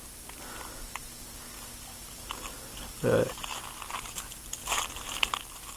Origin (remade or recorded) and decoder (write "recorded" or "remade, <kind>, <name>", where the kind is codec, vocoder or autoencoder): recorded